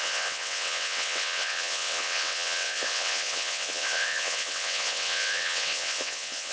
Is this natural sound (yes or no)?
no